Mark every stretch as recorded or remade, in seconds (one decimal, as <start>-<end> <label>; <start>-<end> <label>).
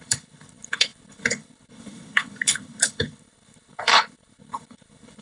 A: 0.0-5.2 remade